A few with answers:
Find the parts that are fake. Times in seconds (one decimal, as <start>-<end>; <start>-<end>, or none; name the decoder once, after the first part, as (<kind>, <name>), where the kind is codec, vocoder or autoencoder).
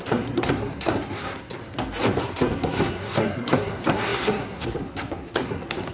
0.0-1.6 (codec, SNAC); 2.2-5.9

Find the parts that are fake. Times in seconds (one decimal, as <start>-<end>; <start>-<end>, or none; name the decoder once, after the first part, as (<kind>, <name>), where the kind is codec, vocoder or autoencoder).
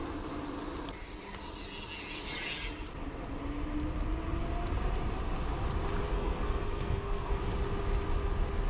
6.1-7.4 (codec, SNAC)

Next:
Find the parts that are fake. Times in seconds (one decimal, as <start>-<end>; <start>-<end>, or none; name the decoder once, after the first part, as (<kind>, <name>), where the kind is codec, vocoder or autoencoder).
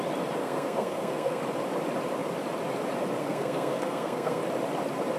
0.4-1.4 (codec, SNAC); 3.2-4.4